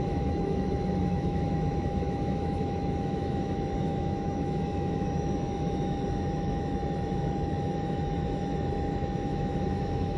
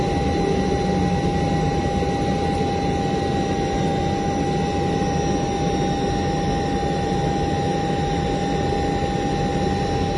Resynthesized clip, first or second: first